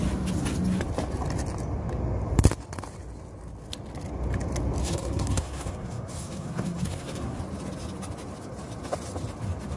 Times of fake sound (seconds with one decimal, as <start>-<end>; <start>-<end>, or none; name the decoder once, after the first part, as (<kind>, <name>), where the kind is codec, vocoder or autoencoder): 4.8-7.4 (codec, SNAC)